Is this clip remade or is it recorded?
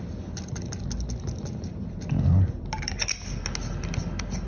recorded